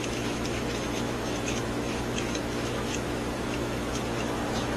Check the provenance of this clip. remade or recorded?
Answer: remade